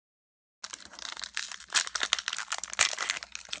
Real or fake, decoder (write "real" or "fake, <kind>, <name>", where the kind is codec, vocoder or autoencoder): real